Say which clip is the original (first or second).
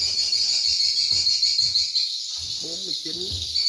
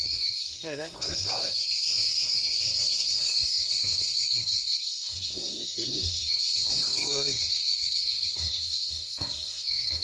first